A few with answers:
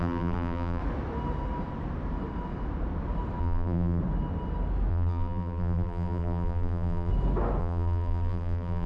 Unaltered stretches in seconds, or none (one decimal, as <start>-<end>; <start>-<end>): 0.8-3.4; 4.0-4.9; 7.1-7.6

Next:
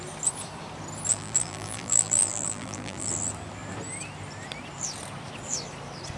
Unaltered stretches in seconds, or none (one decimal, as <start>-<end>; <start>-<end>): 0.0-1.1; 3.1-6.2

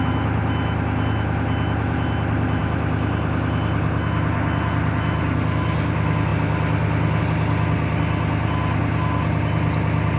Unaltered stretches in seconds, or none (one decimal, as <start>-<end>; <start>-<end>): 0.0-10.2

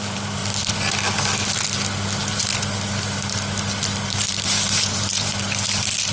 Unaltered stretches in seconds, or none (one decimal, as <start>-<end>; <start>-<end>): 0.4-4.1

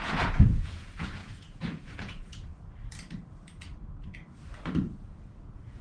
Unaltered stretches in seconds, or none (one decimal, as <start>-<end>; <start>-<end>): 2.5-5.0

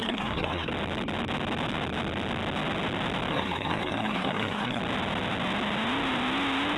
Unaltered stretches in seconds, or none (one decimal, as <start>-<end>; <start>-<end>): 0.7-3.3; 4.8-6.8

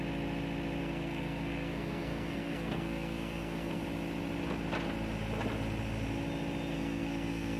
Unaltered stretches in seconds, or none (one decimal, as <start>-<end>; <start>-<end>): 0.0-0.8; 3.8-6.7